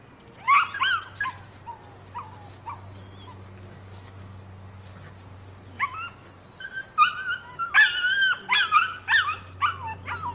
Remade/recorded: recorded